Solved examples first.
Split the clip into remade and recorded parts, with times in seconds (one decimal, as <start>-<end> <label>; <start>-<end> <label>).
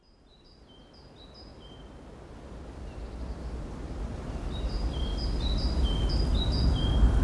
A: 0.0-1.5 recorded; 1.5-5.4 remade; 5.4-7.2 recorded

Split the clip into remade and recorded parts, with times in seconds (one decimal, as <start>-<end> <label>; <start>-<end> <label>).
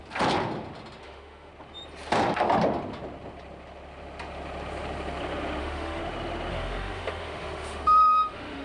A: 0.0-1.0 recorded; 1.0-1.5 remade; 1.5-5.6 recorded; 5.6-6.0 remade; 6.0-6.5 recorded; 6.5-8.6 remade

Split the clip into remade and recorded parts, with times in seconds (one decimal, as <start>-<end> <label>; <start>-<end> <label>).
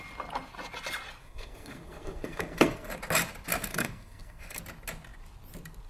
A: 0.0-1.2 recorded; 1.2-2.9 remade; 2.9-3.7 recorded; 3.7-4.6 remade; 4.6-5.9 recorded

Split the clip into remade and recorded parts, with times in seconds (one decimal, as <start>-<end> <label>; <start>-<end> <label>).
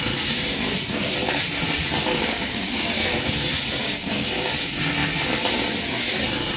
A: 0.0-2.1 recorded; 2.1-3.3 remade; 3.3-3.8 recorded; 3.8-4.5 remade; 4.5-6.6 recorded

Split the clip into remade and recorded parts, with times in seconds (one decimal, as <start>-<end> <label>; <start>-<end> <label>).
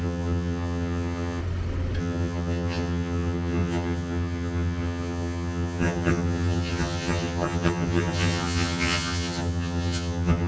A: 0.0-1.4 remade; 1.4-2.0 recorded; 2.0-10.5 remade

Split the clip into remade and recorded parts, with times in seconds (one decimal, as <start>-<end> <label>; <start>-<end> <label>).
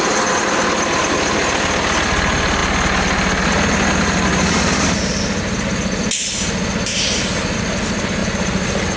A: 0.0-9.0 recorded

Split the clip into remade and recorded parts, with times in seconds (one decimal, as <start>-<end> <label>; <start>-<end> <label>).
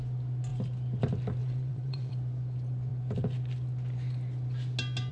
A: 0.0-1.4 recorded; 1.4-2.1 remade; 2.1-5.1 recorded